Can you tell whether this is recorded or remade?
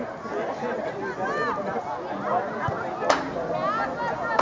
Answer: recorded